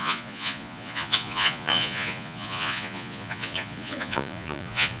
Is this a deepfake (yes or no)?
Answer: yes